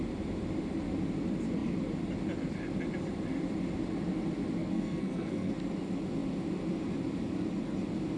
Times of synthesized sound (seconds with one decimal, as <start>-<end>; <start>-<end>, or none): 4.6-5.5